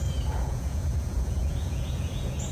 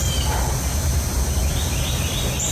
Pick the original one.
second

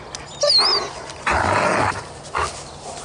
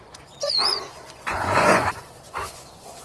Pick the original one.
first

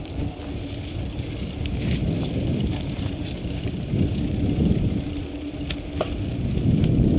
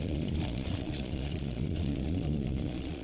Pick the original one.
first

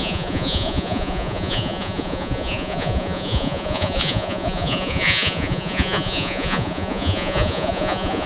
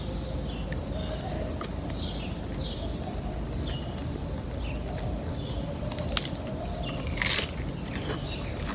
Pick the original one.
second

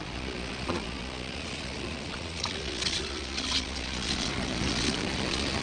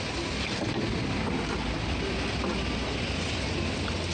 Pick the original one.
second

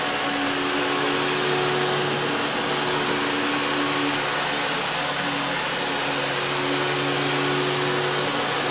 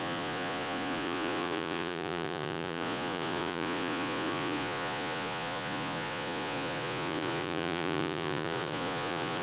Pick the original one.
first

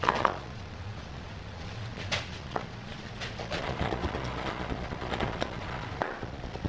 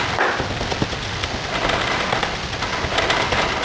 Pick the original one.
second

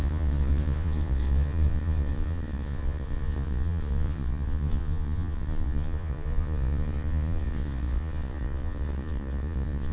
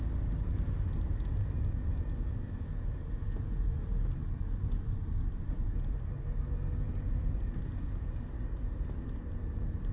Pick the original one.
second